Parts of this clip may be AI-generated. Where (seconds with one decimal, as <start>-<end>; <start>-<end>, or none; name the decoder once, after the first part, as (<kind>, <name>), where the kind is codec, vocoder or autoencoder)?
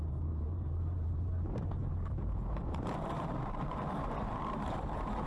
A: 0.0-5.3 (vocoder, BigVGAN v2)